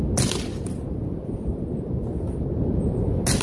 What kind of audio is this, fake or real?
real